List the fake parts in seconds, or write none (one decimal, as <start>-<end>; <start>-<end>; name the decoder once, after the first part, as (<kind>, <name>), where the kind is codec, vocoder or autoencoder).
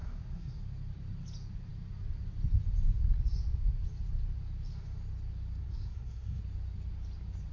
0.0-0.6 (codec, SNAC); 5.6-6.4